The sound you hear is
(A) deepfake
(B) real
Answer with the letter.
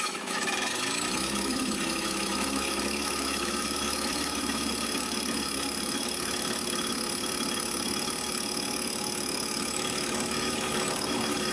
A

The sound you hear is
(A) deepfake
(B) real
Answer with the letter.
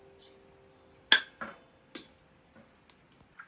B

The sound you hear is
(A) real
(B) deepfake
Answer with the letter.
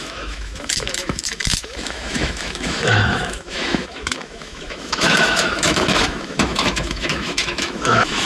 B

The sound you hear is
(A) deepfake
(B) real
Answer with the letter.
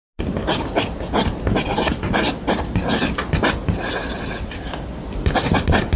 B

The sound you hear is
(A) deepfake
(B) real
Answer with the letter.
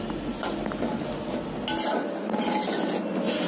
B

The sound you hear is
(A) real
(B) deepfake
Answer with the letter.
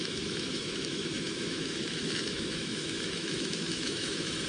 B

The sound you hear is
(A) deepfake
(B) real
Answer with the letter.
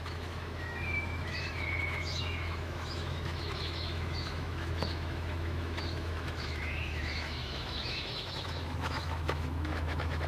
A